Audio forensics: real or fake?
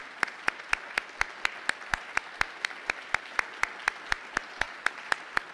real